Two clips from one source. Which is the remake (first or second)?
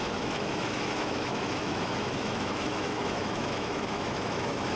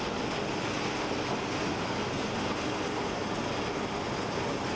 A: first